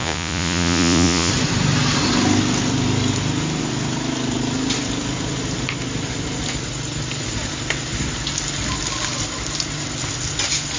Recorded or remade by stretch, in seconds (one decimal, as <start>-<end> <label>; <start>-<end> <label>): 0.0-1.3 remade; 1.3-10.8 recorded